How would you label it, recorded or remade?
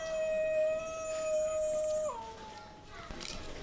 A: recorded